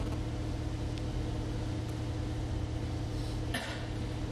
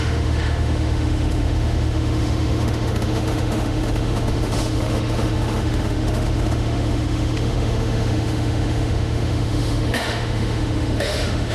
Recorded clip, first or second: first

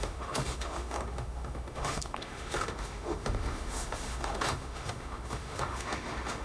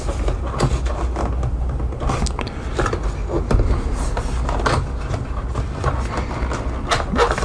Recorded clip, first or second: second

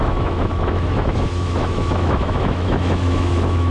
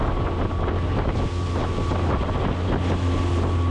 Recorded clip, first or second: second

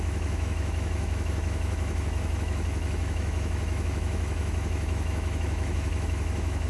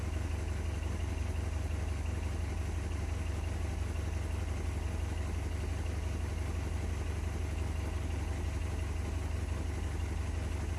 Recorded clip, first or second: second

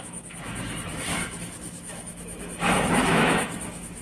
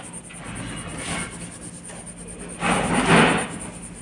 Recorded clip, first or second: second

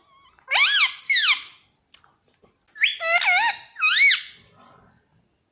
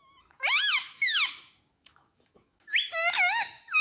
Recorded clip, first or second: first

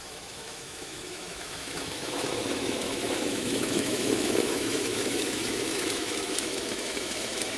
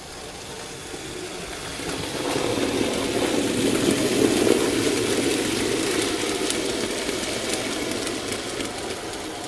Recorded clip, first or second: second